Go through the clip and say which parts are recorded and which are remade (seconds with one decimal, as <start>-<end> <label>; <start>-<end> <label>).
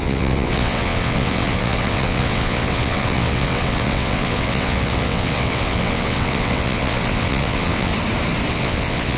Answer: 0.0-7.9 remade; 7.9-8.5 recorded; 8.5-9.2 remade